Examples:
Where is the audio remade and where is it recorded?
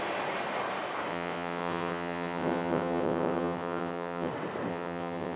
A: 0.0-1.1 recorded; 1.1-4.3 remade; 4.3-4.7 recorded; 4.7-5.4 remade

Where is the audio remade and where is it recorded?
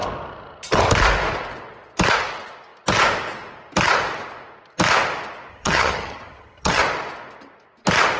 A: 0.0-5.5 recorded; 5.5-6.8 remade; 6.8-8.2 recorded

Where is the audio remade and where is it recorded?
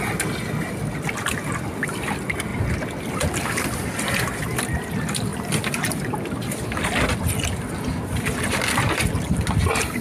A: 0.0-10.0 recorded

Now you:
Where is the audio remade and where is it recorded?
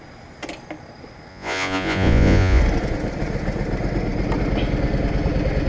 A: 0.0-1.3 recorded; 1.3-2.6 remade; 2.6-5.7 recorded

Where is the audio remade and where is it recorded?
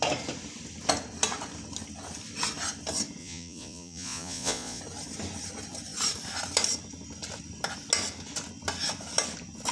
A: 0.0-3.2 recorded; 3.2-4.8 remade; 4.8-9.7 recorded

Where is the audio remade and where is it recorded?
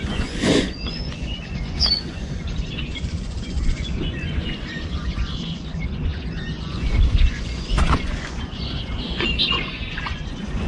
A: 0.0-10.7 remade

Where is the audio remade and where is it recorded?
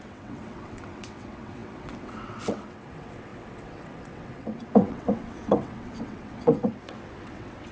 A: 0.0-7.7 remade